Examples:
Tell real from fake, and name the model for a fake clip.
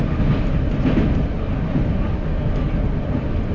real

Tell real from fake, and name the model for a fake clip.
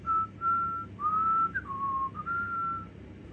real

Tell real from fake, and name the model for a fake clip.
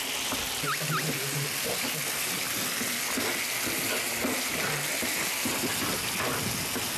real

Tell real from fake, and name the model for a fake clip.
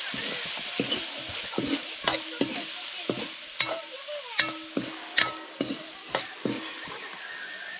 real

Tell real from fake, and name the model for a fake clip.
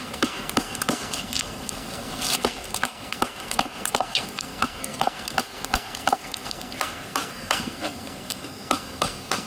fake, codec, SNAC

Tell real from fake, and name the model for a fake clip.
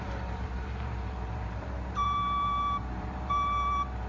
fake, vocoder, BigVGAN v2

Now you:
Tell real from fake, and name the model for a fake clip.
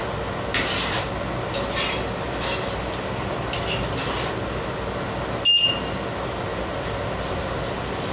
real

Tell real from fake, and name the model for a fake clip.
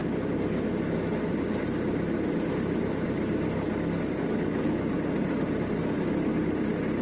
real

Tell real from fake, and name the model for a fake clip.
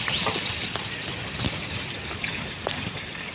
real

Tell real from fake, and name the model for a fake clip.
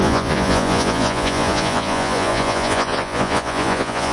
fake, vocoder, Vocos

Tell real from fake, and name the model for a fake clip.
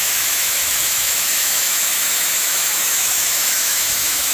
fake, autoencoder, DAC-VAE